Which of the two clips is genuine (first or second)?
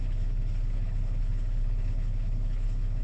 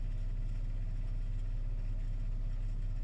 second